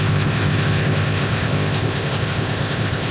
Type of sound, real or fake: fake